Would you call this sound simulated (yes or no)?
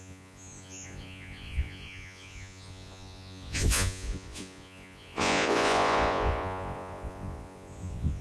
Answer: yes